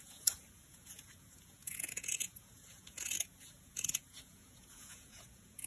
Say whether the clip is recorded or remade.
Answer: remade